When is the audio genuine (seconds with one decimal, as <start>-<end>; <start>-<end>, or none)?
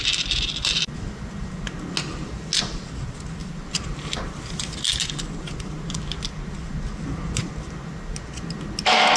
0.0-3.4; 4.5-9.2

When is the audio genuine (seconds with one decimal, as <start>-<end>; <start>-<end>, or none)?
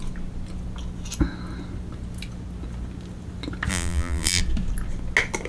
0.0-3.7; 4.4-5.5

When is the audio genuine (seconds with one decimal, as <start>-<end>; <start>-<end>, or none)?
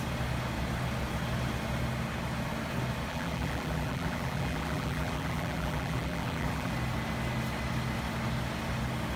0.0-3.1; 6.7-9.2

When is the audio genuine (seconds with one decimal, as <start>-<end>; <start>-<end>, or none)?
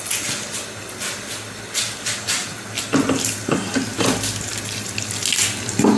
0.0-3.9; 5.1-6.0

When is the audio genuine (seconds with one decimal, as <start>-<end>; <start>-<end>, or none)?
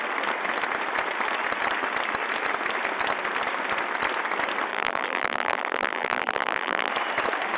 0.0-4.7; 6.9-7.6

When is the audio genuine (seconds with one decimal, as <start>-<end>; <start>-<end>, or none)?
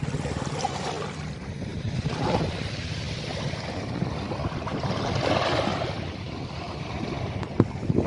0.0-1.7; 3.2-4.7; 7.2-8.1